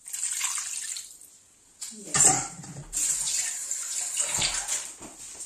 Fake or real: real